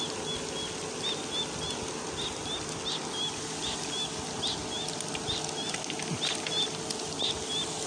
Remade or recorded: recorded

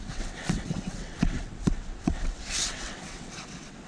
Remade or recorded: remade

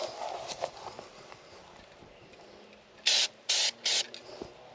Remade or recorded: recorded